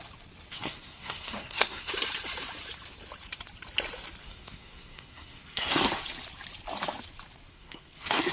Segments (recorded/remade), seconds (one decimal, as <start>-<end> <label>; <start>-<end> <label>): 0.0-0.5 recorded; 0.5-1.9 remade; 1.9-4.2 recorded; 4.2-6.0 remade; 6.0-7.5 recorded; 7.5-8.3 remade